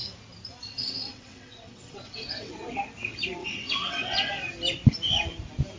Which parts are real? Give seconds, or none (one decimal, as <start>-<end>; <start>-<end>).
0.0-0.7; 2.5-3.4; 4.3-5.8